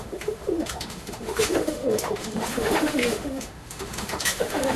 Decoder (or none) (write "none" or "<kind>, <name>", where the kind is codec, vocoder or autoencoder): autoencoder, DAC-VAE